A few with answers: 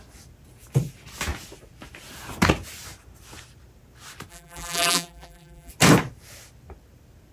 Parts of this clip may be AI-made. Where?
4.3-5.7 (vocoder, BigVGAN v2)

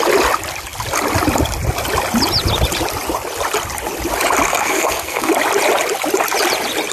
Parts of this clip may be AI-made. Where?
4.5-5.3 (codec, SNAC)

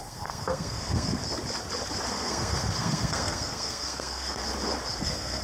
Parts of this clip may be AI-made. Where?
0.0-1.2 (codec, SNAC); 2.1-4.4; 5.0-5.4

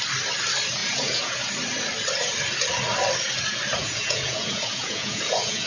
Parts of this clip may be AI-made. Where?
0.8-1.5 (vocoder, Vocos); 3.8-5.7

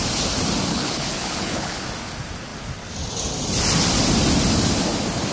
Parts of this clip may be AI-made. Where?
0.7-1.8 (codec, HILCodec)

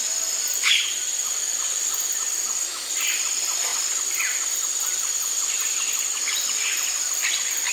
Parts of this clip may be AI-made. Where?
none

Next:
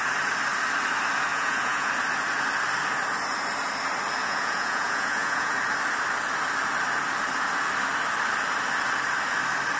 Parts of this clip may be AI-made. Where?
1.3-1.9 (vocoder, Vocos); 4.2-5.5

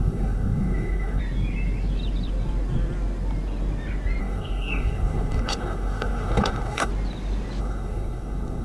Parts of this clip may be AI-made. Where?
0.0-1.2 (codec, SNAC); 4.2-6.9; 7.6-8.6